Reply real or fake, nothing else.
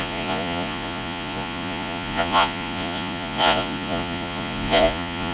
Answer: fake